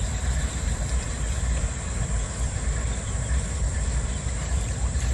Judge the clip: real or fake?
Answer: fake